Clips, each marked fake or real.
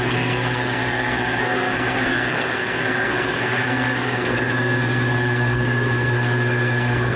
fake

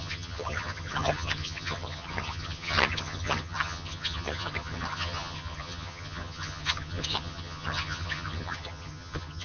fake